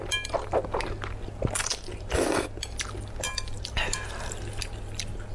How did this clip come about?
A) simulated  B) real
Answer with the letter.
B